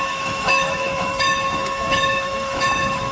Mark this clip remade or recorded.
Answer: remade